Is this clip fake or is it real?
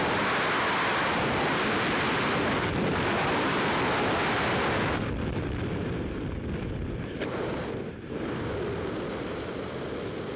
fake